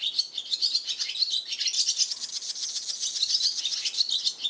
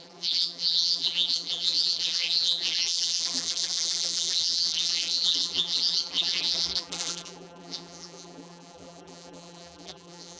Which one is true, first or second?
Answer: first